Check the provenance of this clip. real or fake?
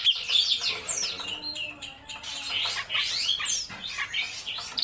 real